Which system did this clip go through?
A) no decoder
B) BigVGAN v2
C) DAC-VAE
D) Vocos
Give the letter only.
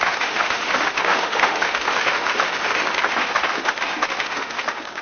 C